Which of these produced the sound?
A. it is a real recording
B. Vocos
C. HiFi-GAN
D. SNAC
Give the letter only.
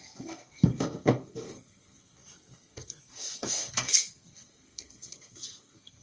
D